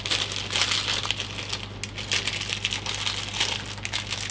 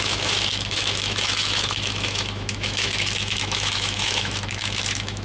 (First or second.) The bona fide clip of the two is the first